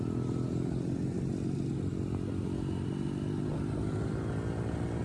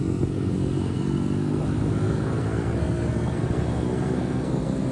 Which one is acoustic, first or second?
first